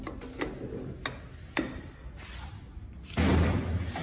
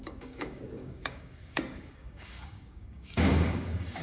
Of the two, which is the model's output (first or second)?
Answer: second